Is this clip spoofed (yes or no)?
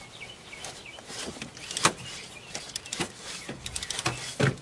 no